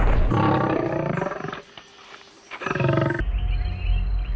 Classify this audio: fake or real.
real